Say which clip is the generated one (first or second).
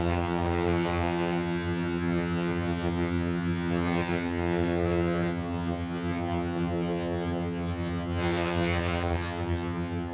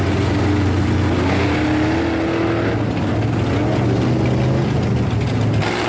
first